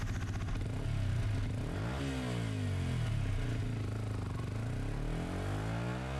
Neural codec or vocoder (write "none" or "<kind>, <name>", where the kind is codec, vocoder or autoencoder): none